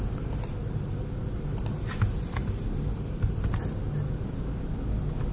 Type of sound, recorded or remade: recorded